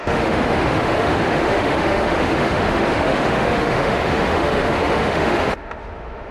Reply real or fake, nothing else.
fake